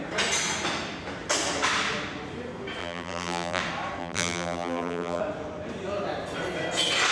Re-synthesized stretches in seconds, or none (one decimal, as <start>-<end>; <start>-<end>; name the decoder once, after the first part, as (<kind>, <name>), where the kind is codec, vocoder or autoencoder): 2.8-3.6 (vocoder, BigVGAN v2); 4.0-5.2